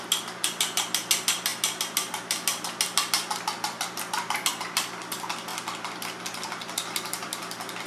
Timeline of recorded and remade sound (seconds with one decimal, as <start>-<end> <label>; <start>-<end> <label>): 0.0-7.9 recorded